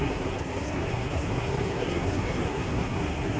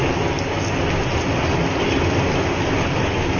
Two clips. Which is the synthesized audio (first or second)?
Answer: first